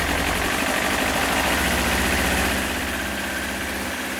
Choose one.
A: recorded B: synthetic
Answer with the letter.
A